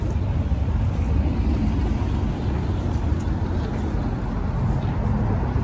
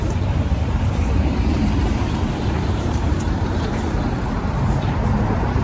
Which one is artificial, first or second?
second